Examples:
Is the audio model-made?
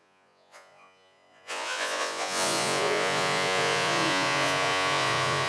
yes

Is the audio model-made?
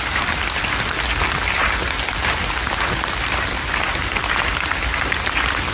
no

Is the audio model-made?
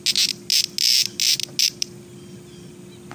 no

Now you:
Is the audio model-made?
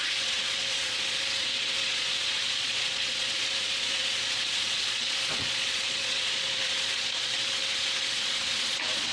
yes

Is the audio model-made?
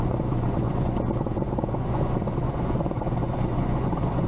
yes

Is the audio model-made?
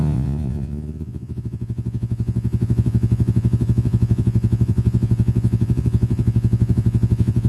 yes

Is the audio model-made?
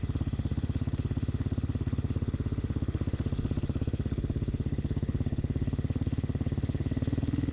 yes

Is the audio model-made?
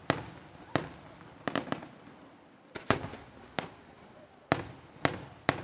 no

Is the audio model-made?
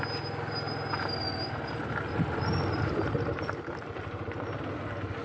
no